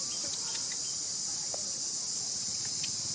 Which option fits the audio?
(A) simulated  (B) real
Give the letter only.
B